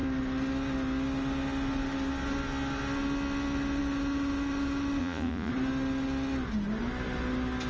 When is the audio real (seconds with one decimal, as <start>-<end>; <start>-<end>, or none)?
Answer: 0.0-5.0; 5.5-7.7